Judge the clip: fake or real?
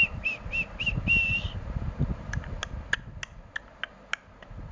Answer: real